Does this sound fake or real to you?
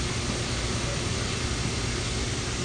real